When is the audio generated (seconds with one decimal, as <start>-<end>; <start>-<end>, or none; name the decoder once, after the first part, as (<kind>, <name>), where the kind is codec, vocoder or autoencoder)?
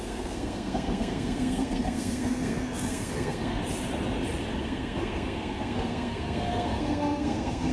0.0-3.6 (codec, SNAC); 4.6-7.7